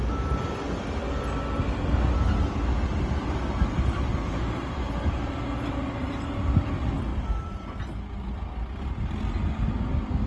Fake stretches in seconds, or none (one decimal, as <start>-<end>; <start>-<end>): none